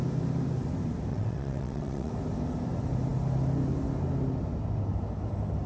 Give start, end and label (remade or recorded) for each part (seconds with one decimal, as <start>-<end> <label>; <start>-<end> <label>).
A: 0.0-1.1 recorded; 1.1-2.1 remade; 2.1-5.7 recorded